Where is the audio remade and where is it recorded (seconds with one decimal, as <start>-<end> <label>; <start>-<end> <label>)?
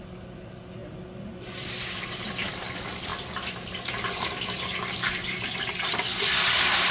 0.0-6.9 recorded